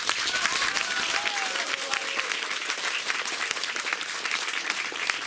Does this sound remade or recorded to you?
recorded